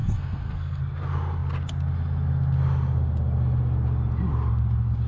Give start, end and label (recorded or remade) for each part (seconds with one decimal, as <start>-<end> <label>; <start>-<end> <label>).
0.0-0.8 remade; 0.8-5.1 recorded